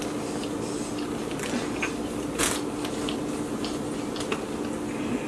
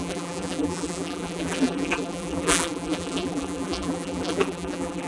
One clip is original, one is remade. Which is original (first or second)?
first